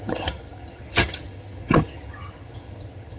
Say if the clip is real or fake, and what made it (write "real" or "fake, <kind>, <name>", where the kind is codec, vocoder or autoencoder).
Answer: fake, vocoder, HiFi-GAN